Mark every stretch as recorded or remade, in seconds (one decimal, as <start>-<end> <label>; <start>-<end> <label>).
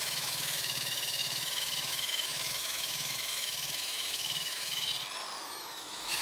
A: 0.0-4.9 remade; 4.9-5.4 recorded; 5.4-6.2 remade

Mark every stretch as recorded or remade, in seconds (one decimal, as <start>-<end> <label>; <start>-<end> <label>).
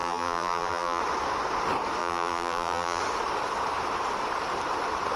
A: 0.0-1.0 remade; 1.0-2.0 recorded; 2.0-3.0 remade; 3.0-5.2 recorded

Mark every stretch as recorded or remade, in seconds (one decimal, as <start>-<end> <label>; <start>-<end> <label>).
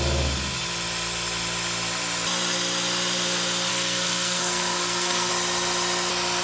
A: 0.0-3.7 recorded; 3.7-5.3 remade; 5.3-6.4 recorded